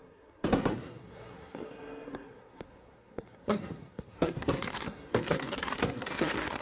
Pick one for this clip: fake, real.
fake